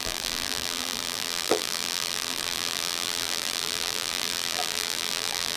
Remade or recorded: remade